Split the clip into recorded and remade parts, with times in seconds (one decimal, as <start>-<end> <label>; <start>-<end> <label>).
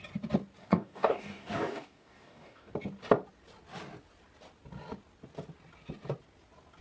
0.0-0.6 recorded; 0.6-2.7 remade; 2.7-6.8 recorded